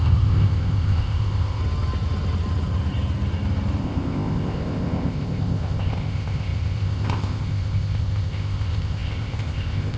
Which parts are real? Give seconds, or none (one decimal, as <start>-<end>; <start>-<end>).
1.6-3.8